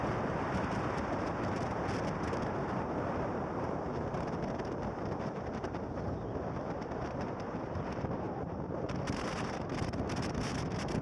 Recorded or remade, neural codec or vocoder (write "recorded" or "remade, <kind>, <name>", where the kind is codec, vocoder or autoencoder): remade, vocoder, BigVGAN v2